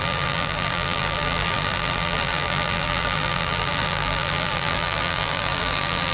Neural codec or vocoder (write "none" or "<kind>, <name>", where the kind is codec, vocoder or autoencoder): vocoder, BigVGAN v2